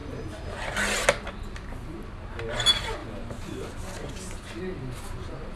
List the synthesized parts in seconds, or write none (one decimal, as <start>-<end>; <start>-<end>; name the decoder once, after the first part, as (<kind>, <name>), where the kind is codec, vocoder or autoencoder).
none